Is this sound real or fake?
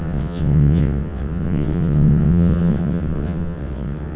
fake